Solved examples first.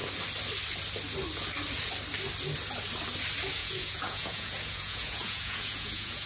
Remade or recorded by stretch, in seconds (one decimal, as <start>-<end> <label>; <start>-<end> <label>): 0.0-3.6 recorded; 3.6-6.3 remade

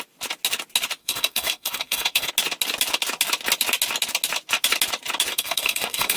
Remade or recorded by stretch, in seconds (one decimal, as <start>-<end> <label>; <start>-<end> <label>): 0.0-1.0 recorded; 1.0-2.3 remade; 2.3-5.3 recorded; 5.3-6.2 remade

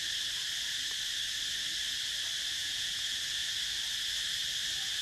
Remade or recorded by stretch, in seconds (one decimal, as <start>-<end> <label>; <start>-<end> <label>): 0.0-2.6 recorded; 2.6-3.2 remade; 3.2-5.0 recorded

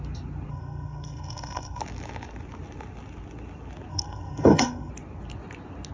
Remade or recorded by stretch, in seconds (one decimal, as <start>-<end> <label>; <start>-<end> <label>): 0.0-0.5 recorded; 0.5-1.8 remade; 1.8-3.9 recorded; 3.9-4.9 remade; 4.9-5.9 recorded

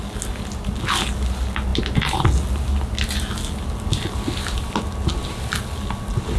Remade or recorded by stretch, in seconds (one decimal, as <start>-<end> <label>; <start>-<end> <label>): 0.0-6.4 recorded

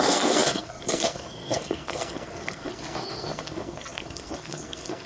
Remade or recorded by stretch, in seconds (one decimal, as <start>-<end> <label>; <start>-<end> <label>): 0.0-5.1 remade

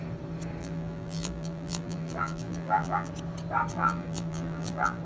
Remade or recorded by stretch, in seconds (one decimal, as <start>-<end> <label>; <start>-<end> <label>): 0.0-0.6 recorded; 0.6-3.1 remade; 3.1-3.7 recorded; 3.7-5.0 remade